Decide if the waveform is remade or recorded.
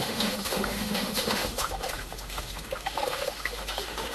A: remade